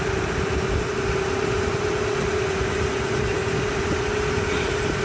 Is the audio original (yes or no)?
yes